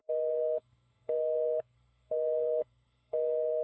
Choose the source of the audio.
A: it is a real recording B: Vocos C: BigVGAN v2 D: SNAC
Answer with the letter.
D